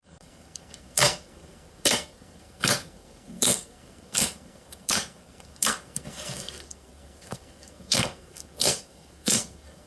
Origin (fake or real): fake